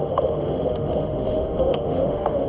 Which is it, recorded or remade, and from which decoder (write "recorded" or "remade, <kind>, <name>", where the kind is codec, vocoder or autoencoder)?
remade, autoencoder, DAC-VAE